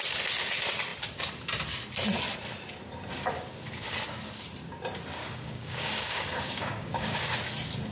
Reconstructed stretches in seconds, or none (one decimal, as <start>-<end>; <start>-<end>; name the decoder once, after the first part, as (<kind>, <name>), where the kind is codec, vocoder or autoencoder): 5.2-7.3 (codec, DAC)

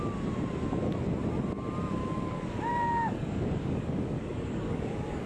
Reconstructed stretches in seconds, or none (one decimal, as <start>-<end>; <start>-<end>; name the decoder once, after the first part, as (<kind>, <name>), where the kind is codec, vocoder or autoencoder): 2.0-5.3 (codec, DAC)

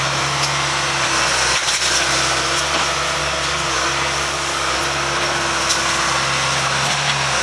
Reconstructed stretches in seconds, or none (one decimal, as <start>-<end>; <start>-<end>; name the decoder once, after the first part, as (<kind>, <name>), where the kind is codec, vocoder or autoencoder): 3.2-4.8 (codec, DAC)

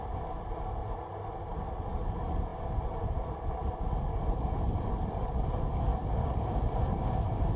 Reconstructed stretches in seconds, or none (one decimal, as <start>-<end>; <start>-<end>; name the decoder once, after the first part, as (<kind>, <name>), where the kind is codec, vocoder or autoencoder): none

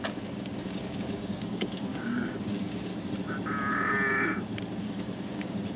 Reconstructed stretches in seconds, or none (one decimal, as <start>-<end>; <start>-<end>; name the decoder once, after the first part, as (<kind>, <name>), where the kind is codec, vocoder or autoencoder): 0.0-2.9 (codec, DAC); 4.8-5.8

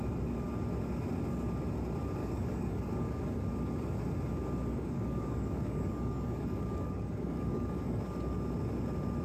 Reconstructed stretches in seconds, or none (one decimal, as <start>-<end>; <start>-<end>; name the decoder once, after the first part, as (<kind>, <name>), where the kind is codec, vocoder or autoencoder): 2.2-3.4 (codec, DAC); 4.7-8.0